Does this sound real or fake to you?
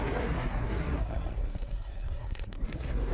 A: fake